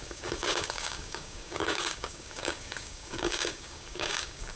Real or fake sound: fake